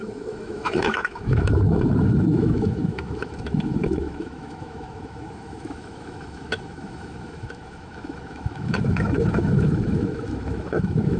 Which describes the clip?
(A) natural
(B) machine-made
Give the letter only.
B